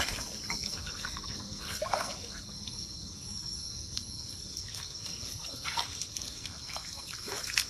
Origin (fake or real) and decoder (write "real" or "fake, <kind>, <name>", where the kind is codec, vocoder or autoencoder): fake, codec, SNAC